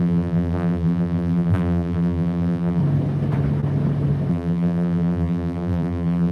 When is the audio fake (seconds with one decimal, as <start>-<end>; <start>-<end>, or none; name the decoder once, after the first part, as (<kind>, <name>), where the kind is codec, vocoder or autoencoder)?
0.0-2.8 (vocoder, BigVGAN v2); 4.3-6.3

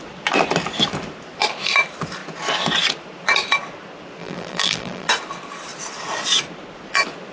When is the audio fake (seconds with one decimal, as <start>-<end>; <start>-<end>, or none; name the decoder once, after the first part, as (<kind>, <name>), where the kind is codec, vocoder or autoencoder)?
4.2-5.1 (vocoder, BigVGAN v2)

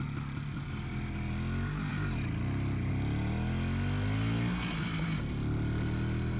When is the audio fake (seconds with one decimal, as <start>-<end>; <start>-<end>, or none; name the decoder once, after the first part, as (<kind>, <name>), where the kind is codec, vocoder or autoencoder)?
none

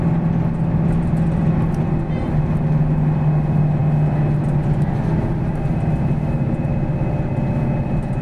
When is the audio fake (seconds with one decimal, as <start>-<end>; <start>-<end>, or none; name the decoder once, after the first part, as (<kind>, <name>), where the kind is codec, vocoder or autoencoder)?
none

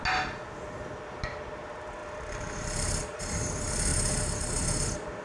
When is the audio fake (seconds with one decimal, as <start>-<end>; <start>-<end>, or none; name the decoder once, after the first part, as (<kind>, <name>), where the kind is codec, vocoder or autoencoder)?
2.0-3.2 (vocoder, BigVGAN v2)

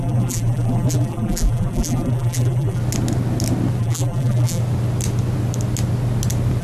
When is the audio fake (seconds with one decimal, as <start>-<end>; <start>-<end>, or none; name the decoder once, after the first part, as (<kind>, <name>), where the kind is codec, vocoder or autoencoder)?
0.0-2.8 (vocoder, BigVGAN v2); 3.8-4.6

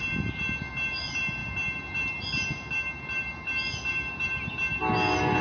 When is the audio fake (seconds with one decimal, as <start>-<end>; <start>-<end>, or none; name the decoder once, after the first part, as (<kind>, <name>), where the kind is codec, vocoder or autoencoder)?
none